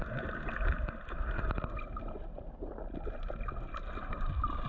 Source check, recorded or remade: recorded